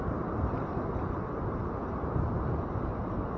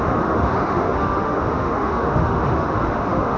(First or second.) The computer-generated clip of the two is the second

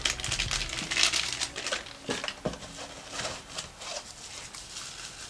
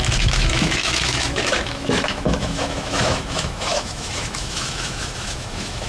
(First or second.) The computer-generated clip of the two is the second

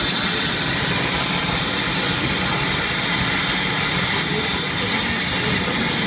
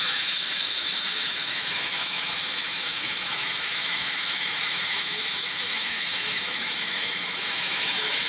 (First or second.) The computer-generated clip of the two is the second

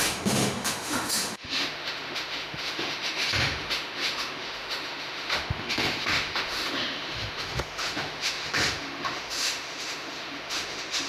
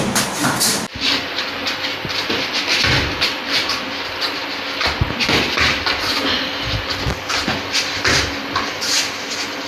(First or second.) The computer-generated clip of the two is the first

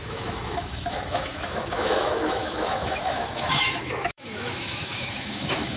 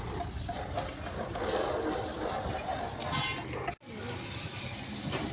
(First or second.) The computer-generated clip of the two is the first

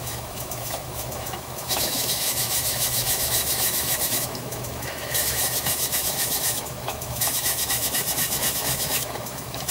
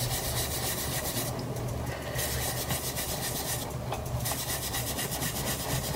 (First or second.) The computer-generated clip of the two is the first